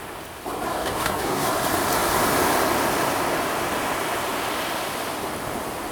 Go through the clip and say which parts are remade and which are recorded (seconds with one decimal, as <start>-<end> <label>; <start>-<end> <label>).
0.0-0.7 recorded; 0.7-1.5 remade; 1.5-5.9 recorded